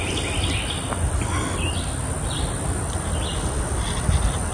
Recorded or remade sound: recorded